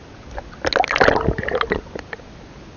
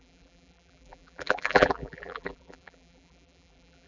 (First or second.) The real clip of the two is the first